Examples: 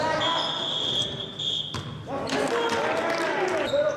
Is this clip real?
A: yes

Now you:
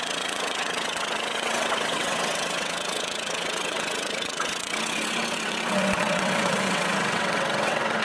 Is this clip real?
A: no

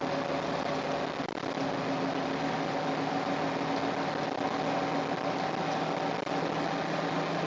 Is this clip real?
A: yes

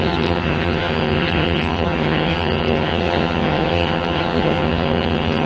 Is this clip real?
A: no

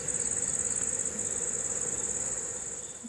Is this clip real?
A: yes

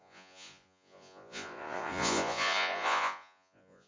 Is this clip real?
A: no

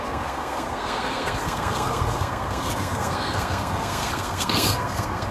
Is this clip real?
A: no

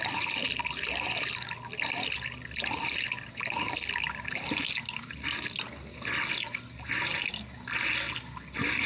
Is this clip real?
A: yes